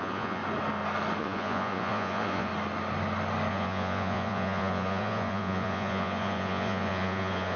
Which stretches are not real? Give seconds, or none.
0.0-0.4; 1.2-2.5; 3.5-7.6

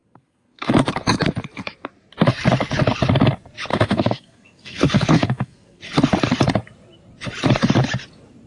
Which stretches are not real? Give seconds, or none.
0.0-0.7; 3.7-5.8

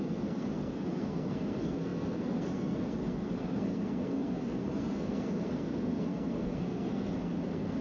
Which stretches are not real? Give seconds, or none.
0.0-7.8